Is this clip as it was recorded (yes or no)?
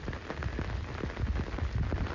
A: yes